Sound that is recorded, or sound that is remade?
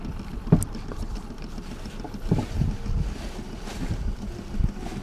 recorded